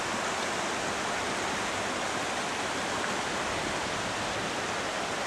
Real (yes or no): yes